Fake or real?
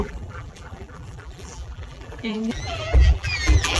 fake